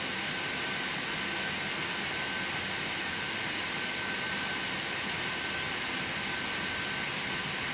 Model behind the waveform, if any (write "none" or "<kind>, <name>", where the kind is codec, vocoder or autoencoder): none